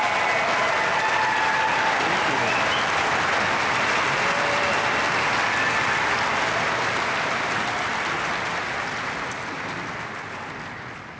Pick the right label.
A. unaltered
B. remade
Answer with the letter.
A